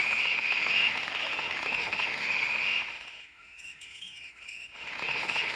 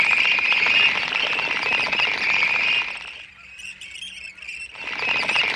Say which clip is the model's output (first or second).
first